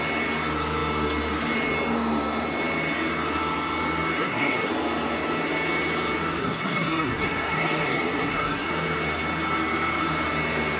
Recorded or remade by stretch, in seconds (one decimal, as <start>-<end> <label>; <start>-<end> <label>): 0.0-4.2 recorded; 4.2-4.7 remade; 4.7-6.4 recorded; 6.4-8.7 remade; 8.7-10.8 recorded